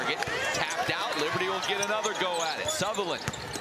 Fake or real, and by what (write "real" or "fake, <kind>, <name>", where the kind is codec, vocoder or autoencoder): real